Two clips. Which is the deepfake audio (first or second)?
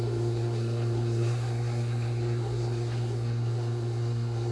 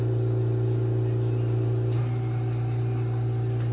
first